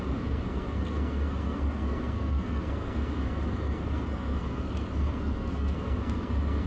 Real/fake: fake